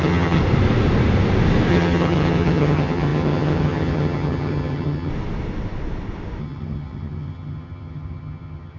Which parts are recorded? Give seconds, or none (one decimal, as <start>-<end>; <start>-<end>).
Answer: 0.4-1.7; 5.1-6.4